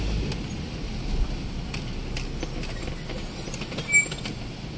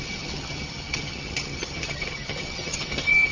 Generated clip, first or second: second